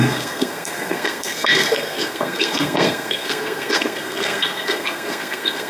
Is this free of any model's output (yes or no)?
no